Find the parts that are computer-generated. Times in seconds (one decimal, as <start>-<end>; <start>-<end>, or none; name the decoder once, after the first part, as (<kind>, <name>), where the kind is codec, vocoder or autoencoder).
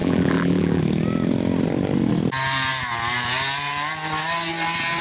0.0-0.8 (vocoder, BigVGAN v2)